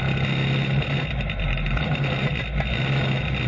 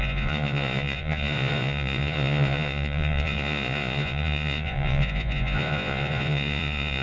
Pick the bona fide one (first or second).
first